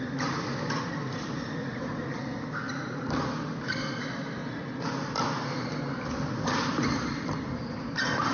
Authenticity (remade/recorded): remade